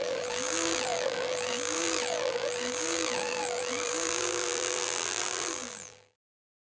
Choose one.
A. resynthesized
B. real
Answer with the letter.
A